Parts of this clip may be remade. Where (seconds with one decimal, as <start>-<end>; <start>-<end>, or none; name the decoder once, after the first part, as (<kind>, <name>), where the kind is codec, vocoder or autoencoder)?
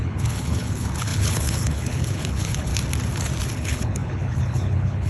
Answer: 0.0-2.7 (codec, HILCodec); 3.5-5.1